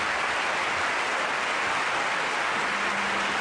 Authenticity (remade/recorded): recorded